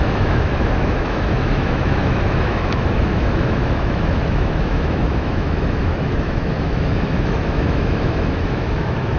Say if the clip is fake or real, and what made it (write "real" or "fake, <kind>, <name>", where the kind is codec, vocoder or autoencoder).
fake, autoencoder, DAC-VAE